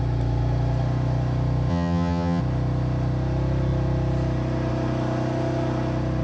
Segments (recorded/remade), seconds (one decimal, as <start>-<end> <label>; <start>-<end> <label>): 0.0-1.7 recorded; 1.7-2.4 remade; 2.4-6.2 recorded